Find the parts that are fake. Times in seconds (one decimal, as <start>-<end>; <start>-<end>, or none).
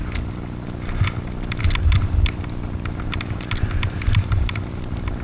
none